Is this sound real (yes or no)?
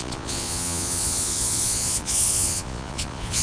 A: no